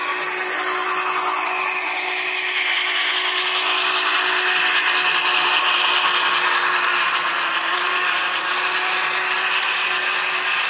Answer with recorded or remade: recorded